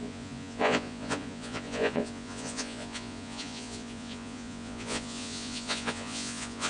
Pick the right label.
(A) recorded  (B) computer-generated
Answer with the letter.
B